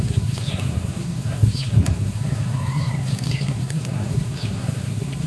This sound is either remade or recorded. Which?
remade